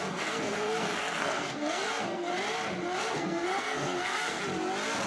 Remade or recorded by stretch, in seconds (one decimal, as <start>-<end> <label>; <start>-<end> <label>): 0.0-2.3 remade; 2.3-3.0 recorded; 3.0-4.4 remade; 4.4-5.1 recorded